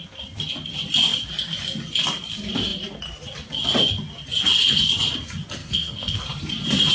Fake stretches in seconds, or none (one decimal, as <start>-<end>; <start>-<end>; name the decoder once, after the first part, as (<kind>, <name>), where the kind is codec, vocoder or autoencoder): 5.6-6.2 (codec, SNAC)